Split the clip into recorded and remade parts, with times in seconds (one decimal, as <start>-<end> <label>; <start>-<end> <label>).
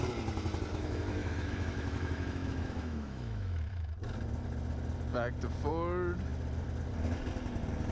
0.0-0.7 recorded; 0.7-3.9 remade; 3.9-7.9 recorded